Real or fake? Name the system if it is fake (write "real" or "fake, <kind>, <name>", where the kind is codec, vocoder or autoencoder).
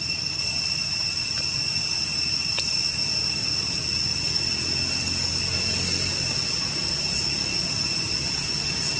real